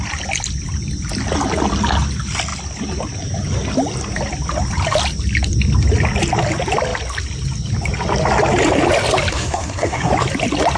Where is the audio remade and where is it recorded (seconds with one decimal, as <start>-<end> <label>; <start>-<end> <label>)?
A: 0.0-9.3 recorded; 9.3-10.1 remade; 10.1-10.8 recorded